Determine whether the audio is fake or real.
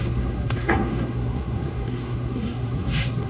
fake